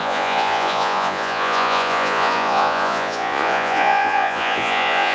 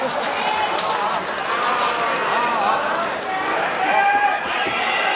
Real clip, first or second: second